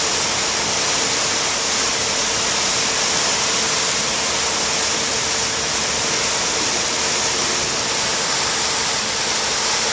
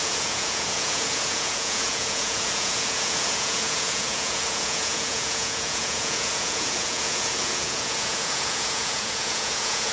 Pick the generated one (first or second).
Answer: second